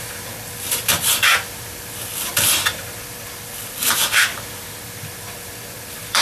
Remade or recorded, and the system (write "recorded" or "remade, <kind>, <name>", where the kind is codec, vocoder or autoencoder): remade, vocoder, BigVGAN v2